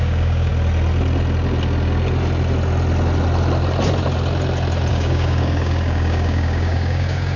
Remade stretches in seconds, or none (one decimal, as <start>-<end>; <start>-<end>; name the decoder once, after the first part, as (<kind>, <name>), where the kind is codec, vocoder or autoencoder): 0.0-0.5 (codec, DAC); 4.9-7.4